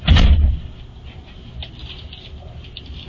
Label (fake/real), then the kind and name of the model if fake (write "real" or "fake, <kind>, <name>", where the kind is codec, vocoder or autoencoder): real